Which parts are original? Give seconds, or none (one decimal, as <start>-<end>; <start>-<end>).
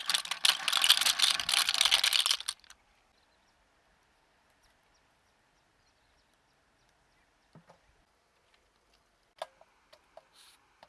0.0-10.9